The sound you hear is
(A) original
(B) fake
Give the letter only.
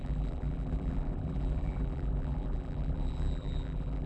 B